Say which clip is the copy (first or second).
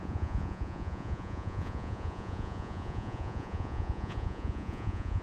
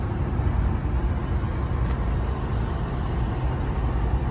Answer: first